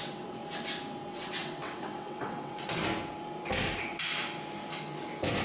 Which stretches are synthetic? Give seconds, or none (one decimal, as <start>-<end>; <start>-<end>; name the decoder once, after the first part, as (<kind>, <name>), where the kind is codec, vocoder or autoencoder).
0.0-0.4 (vocoder, WaveNeXt); 1.1-2.8